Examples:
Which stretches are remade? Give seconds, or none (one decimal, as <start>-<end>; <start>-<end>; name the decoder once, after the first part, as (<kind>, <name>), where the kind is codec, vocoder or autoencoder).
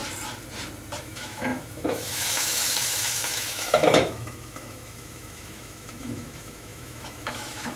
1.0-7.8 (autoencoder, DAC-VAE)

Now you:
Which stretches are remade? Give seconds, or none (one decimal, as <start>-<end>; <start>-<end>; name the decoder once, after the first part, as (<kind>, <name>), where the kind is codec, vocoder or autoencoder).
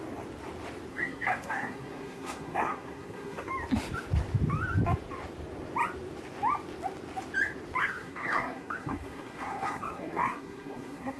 0.9-3.5 (codec, SNAC); 7.8-11.2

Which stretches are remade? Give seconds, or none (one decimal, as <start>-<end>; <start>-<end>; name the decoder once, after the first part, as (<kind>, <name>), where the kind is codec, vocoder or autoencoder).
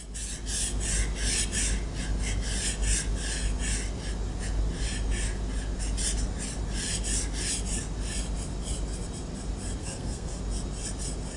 9.8-10.4 (codec, SNAC)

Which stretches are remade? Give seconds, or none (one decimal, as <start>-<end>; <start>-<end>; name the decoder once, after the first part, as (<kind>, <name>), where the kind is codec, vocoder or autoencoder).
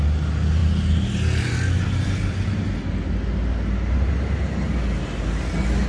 none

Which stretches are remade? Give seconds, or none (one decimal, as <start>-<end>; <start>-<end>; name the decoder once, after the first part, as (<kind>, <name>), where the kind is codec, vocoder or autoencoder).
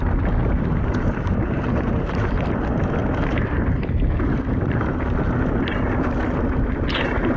0.4-2.5 (vocoder, BigVGAN v2)